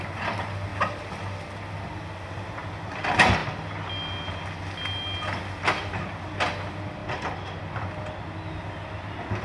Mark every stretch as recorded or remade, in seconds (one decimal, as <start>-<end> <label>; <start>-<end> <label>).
0.0-9.4 recorded